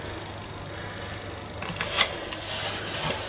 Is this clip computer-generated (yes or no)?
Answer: no